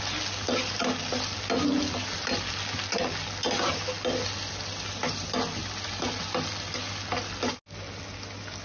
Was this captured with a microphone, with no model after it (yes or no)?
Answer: yes